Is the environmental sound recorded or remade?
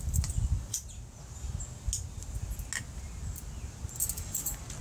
recorded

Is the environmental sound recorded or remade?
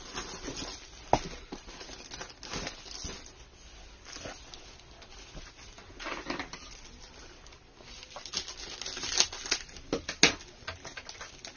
recorded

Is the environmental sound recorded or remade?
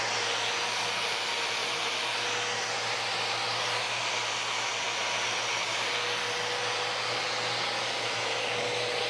recorded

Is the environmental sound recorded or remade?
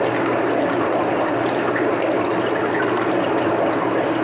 recorded